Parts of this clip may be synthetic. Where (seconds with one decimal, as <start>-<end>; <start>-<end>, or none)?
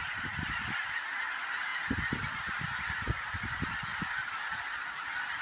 none